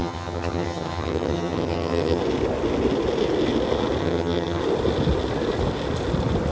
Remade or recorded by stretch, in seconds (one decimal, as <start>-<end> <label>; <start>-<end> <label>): 0.0-2.2 remade; 2.2-4.0 recorded; 4.0-4.6 remade; 4.6-6.5 recorded